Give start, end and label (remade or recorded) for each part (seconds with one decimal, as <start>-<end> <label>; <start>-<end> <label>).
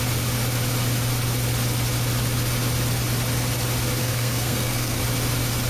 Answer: 0.0-4.0 recorded; 4.0-5.0 remade; 5.0-5.7 recorded